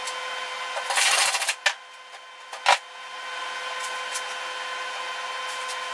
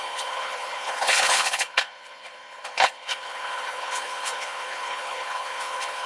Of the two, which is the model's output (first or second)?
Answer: second